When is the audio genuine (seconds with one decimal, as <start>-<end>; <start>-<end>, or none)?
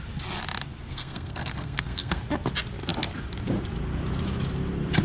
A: 0.0-0.9; 2.2-5.0